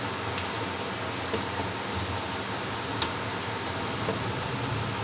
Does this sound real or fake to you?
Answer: real